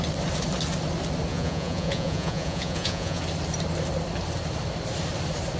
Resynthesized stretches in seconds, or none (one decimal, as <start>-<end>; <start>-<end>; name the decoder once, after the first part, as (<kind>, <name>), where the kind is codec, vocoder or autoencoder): 1.3-3.2 (vocoder, Vocos)